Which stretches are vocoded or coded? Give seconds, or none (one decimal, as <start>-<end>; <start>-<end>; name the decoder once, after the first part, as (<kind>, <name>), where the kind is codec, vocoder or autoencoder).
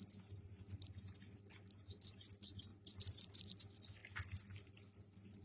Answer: none